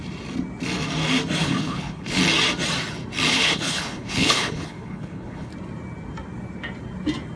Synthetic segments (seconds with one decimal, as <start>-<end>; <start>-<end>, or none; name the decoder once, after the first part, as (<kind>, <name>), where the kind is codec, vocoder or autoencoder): 1.4-2.2 (codec, HILCodec); 3.3-5.5